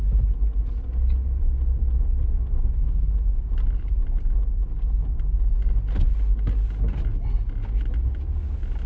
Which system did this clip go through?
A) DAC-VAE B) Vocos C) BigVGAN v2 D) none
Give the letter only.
D